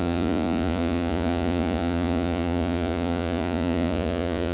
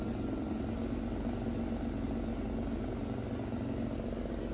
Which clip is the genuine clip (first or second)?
second